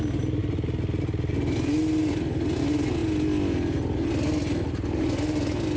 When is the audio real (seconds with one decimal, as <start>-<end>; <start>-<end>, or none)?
0.0-5.8